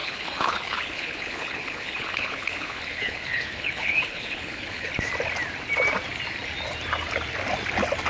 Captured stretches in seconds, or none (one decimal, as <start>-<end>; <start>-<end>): 4.9-8.1